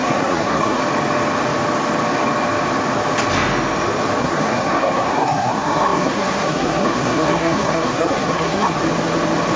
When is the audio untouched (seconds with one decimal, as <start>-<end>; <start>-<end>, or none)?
0.8-4.2; 8.8-9.6